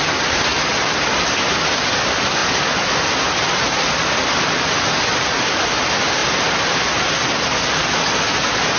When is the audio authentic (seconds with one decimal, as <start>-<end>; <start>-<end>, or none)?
0.0-8.8

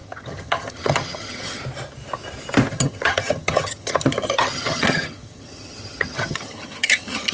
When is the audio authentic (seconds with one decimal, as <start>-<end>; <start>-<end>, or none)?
1.6-2.7

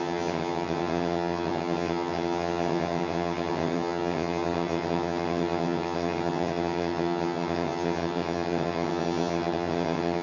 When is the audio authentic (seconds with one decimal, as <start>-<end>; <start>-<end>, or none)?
none

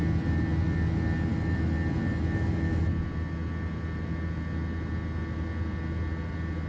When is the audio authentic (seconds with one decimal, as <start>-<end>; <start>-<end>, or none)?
0.0-6.7

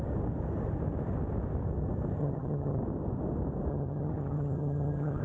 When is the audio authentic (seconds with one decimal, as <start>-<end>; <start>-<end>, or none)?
0.0-2.2; 2.8-3.7